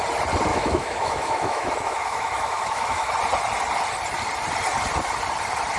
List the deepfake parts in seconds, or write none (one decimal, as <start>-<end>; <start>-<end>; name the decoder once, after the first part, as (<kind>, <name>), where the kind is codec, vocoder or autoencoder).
0.5-3.1 (autoencoder, DAC-VAE)